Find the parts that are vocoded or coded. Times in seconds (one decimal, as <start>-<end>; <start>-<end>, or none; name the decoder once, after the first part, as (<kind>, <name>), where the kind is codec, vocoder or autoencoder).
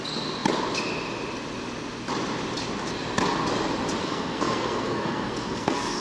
4.0-6.0 (codec, SNAC)